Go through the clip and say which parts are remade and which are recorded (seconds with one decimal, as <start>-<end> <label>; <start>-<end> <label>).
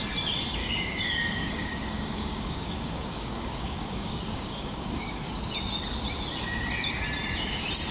0.0-0.6 recorded; 0.6-5.3 remade; 5.3-7.9 recorded